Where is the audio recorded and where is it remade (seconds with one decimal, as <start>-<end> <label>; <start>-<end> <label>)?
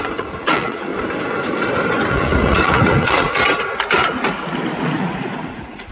0.0-0.9 remade; 0.9-2.1 recorded; 2.1-3.4 remade; 3.4-4.8 recorded; 4.8-5.9 remade